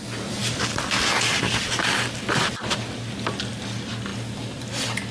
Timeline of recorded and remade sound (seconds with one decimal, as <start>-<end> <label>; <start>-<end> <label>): 0.0-5.1 recorded